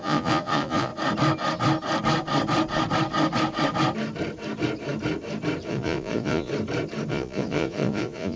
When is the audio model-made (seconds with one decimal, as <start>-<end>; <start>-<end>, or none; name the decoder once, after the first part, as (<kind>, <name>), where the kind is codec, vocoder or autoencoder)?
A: 0.0-0.9 (vocoder, Vocos); 5.7-6.5; 7.1-8.4